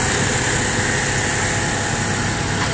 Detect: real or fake real